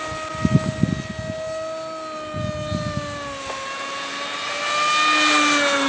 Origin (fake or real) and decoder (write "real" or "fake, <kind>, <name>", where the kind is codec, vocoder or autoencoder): real